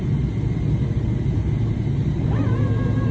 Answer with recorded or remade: recorded